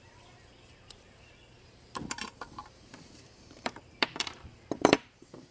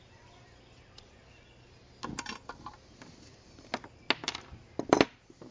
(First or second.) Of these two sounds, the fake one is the first